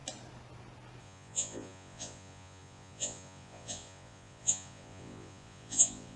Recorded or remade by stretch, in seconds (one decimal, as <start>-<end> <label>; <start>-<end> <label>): 0.0-1.0 recorded; 1.0-6.2 remade